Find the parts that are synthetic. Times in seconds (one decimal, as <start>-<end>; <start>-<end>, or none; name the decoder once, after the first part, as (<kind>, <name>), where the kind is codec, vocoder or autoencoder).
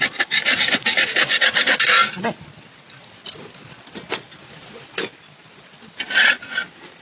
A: 0.0-2.0 (vocoder, BigVGAN v2); 4.4-7.0